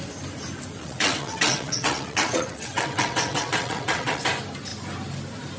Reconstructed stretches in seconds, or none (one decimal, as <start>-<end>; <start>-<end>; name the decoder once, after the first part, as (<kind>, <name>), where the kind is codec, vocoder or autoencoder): 0.8-4.2 (vocoder, WaveNeXt)